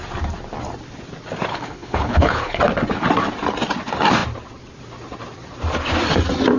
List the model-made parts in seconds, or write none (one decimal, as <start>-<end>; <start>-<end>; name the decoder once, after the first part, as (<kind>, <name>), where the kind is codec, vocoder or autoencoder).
1.5-2.6 (codec, HILCodec)